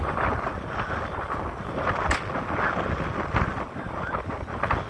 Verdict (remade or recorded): recorded